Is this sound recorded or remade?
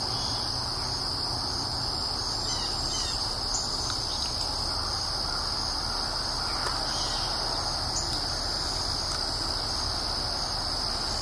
recorded